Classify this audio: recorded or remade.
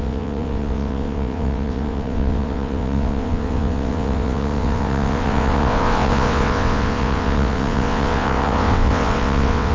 remade